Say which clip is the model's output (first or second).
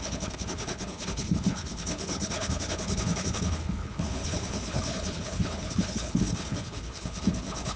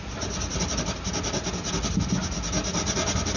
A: first